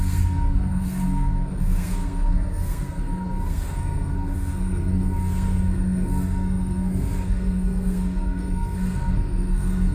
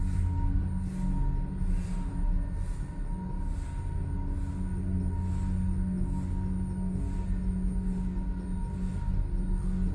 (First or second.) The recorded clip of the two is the second